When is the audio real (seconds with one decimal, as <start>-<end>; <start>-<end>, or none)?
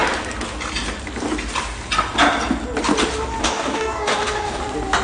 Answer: 0.0-3.4; 4.6-5.0